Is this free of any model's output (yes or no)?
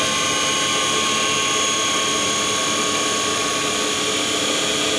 yes